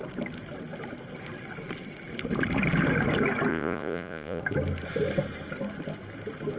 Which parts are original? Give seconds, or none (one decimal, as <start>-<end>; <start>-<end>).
0.0-3.5; 4.4-6.6